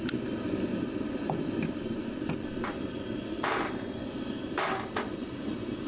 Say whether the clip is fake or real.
real